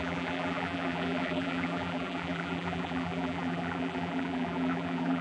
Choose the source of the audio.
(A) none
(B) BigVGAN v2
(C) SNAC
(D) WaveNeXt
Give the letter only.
B